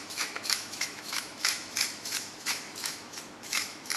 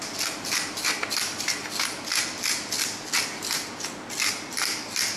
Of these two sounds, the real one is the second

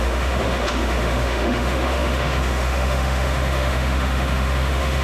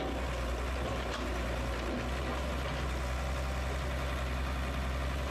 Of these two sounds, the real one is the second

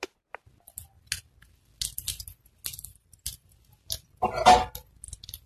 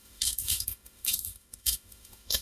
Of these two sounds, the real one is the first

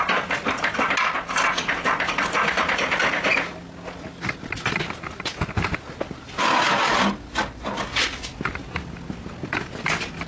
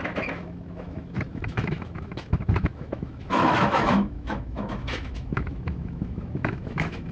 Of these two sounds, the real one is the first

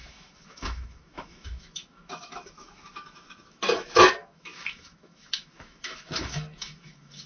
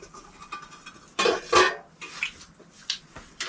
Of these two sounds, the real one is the second